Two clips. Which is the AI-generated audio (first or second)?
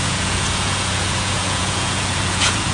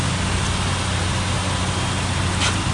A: first